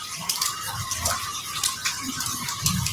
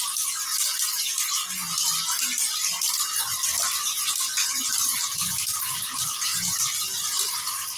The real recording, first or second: second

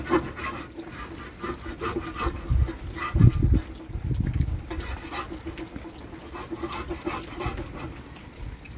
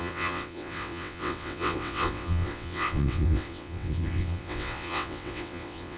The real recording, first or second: first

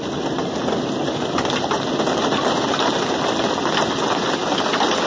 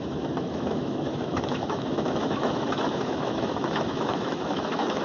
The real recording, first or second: first